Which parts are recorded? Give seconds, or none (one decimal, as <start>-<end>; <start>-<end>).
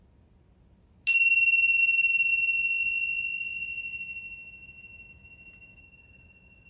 0.0-1.8; 2.3-3.4; 5.8-6.7